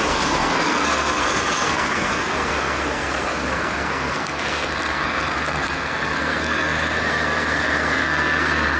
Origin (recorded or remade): remade